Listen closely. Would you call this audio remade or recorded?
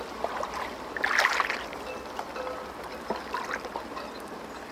recorded